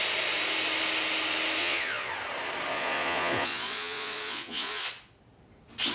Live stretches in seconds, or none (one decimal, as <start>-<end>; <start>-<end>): 0.0-1.6; 2.1-2.7; 4.9-5.9